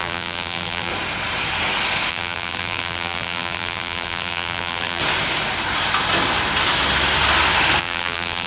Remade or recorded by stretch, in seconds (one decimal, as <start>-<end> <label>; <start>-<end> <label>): 0.0-0.9 remade; 0.9-2.1 recorded; 2.1-5.0 remade; 5.0-7.8 recorded; 7.8-8.5 remade